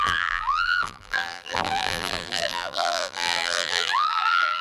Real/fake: fake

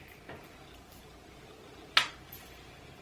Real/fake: real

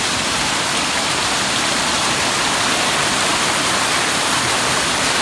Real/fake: real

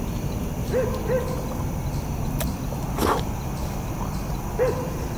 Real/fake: real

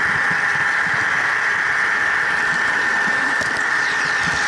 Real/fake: fake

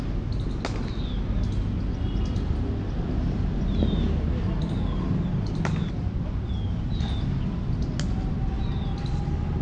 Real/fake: real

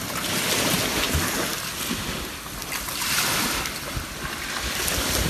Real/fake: real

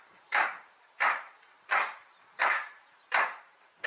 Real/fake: fake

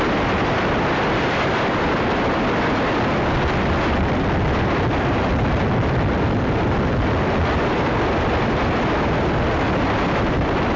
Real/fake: fake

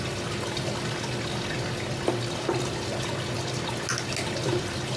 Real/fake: real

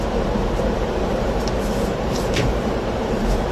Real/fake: fake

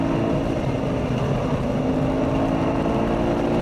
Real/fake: real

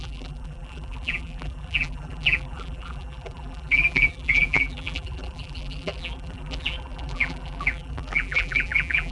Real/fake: fake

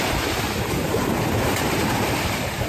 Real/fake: fake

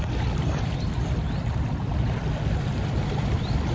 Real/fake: fake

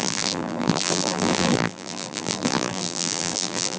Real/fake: fake